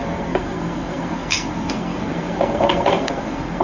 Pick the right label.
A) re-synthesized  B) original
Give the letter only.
A